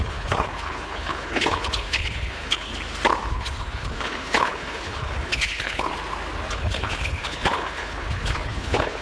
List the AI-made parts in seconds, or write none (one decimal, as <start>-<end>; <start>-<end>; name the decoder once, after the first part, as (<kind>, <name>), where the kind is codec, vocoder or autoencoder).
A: 0.0-2.7 (codec, HILCodec); 3.3-5.9; 6.5-9.0